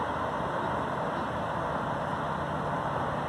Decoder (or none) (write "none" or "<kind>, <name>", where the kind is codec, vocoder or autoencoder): none